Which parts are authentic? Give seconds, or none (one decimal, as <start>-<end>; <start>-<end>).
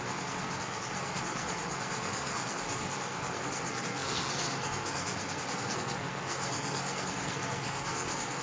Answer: none